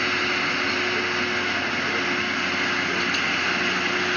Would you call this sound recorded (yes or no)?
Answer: yes